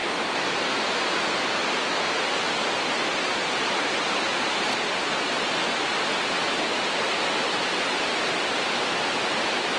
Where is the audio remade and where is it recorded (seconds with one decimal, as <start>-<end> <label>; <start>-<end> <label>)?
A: 0.0-9.8 recorded